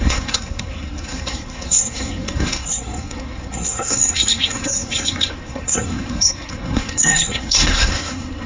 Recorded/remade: remade